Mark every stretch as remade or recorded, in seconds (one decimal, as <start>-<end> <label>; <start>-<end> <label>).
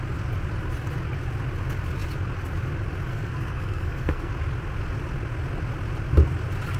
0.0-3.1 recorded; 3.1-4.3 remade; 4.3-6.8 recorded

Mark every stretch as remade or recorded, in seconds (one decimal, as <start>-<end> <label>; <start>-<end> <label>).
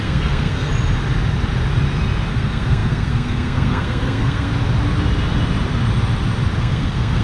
0.0-0.7 remade; 0.7-2.3 recorded; 2.3-4.5 remade; 4.5-6.6 recorded; 6.6-7.2 remade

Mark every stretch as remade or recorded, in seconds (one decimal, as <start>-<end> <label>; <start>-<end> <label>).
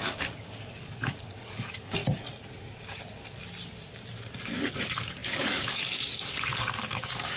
0.0-2.0 remade; 2.0-4.4 recorded; 4.4-7.4 remade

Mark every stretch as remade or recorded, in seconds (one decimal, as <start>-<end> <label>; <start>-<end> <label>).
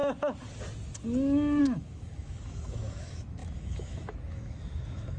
0.0-1.6 recorded; 1.6-5.2 remade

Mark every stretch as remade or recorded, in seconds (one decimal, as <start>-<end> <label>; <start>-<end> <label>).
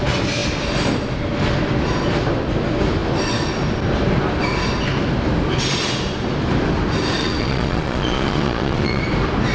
0.0-7.2 recorded; 7.2-9.0 remade; 9.0-9.5 recorded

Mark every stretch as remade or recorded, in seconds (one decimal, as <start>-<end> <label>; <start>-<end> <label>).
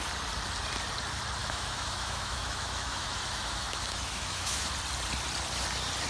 0.0-1.4 recorded; 1.4-4.7 remade; 4.7-6.1 recorded